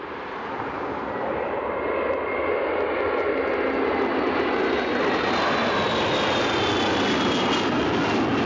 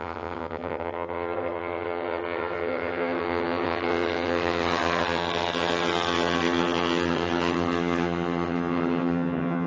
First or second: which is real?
first